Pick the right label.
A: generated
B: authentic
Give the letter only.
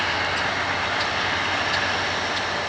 B